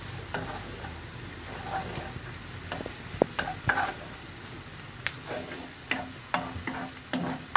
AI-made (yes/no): no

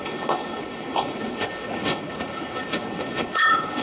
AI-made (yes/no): yes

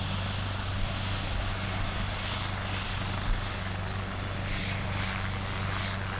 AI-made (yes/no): no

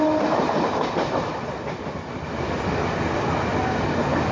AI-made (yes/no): no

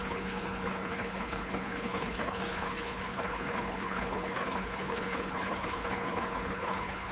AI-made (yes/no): yes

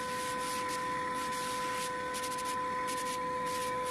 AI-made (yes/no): no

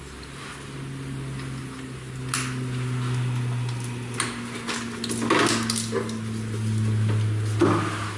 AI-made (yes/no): no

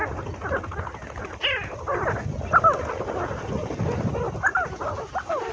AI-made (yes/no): no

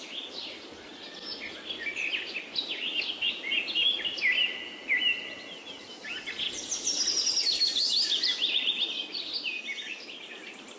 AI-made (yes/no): no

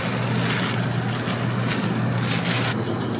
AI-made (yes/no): no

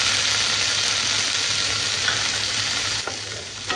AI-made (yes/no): no